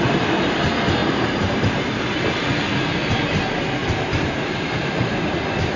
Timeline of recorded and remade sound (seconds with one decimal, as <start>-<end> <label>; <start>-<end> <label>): 0.0-1.0 recorded; 1.0-1.6 remade; 1.6-3.8 recorded; 3.8-5.2 remade; 5.2-5.8 recorded